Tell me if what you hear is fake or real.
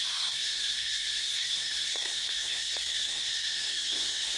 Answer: fake